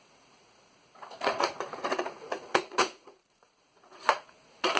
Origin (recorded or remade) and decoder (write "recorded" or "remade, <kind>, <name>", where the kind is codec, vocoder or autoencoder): remade, vocoder, Vocos